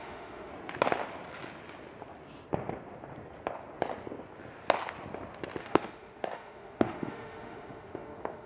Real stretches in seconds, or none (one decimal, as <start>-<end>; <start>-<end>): 0.5-5.6